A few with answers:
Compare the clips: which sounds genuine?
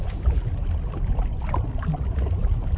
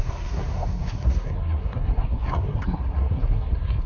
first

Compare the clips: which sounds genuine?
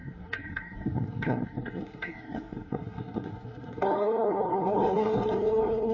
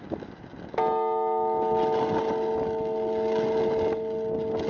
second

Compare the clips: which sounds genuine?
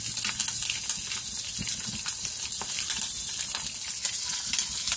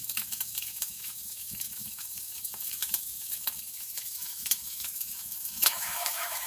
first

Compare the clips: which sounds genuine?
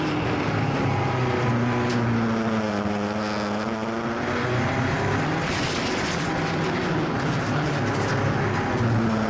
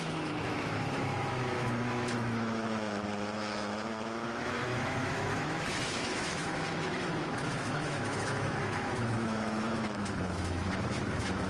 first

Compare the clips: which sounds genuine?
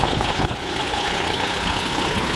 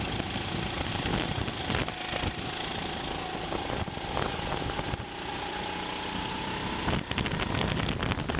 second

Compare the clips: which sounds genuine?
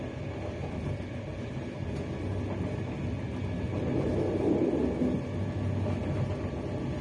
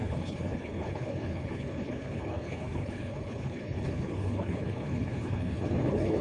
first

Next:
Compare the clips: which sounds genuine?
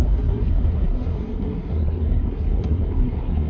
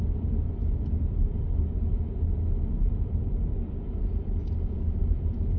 second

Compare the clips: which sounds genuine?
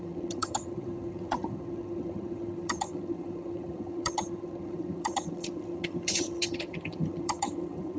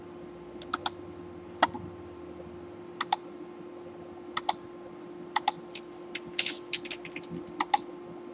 second